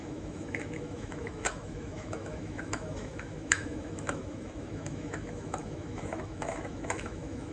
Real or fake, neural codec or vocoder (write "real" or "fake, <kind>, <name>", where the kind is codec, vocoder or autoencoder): fake, autoencoder, DAC-VAE